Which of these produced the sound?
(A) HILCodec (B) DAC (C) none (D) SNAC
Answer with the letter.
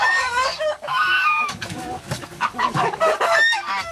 B